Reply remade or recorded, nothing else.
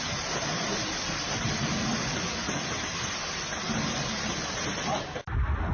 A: recorded